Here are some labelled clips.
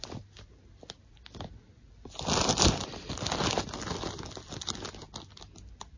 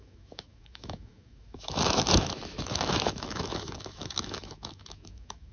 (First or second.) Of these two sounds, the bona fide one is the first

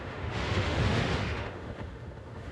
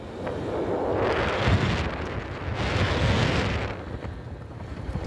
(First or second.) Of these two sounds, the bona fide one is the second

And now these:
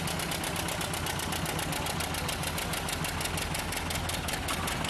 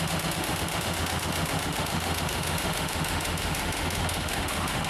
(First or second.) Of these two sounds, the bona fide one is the first